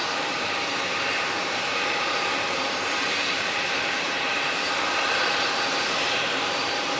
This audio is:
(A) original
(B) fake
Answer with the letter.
B